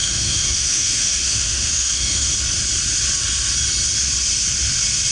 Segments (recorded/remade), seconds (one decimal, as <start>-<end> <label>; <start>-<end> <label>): 0.0-2.3 remade; 2.3-5.1 recorded